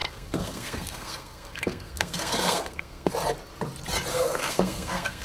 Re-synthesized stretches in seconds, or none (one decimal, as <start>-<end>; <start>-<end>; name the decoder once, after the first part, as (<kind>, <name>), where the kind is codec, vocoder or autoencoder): 0.0-3.1 (codec, SNAC); 4.1-5.2